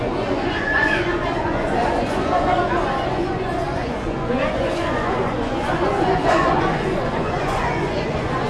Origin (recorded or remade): remade